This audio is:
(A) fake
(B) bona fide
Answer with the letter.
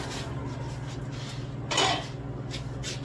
B